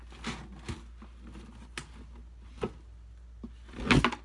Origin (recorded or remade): recorded